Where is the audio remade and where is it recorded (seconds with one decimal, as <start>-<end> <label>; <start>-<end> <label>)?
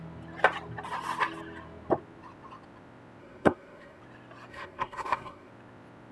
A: 0.0-3.2 recorded; 3.2-4.0 remade; 4.0-4.5 recorded; 4.5-5.5 remade; 5.5-6.1 recorded